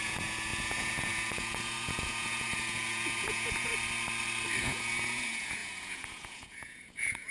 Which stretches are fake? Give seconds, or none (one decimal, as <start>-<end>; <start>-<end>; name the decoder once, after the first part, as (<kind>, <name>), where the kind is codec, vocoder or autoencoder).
0.0-3.7 (vocoder, Vocos); 4.6-7.3